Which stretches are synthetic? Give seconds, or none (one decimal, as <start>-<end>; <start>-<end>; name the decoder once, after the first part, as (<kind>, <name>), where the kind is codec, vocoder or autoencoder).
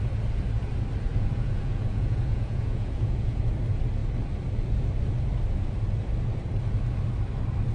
1.1-3.5 (vocoder, Vocos)